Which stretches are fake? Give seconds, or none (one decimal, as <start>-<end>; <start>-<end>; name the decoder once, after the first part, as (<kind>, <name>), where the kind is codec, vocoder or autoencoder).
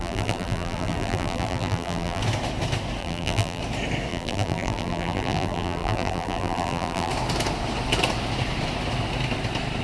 0.0-2.2 (vocoder, BigVGAN v2); 3.0-3.6; 4.1-7.1